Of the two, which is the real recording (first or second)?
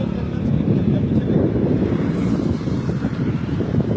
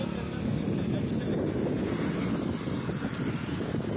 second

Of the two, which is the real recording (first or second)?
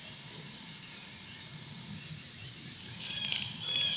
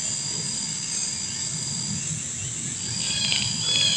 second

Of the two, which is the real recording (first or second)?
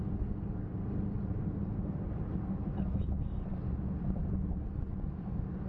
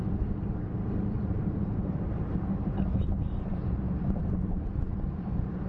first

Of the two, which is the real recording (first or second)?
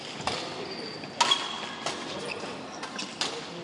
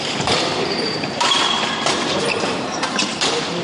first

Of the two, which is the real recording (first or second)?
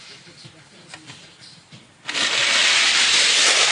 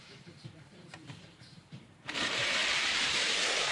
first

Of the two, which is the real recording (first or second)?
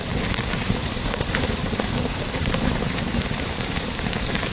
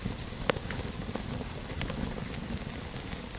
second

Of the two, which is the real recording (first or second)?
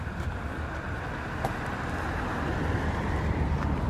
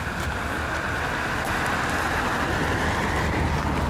second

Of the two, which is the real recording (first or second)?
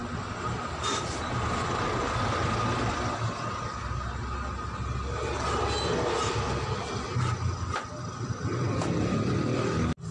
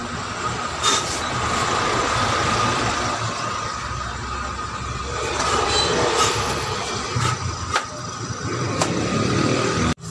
first